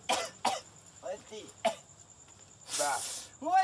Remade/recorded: recorded